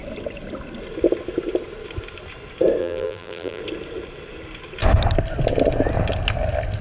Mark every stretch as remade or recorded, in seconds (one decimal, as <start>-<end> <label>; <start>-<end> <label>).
0.0-2.8 recorded; 2.8-3.6 remade; 3.6-6.8 recorded